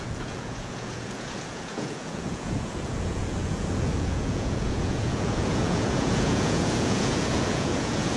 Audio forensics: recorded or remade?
remade